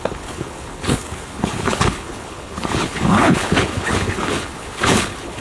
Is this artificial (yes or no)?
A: yes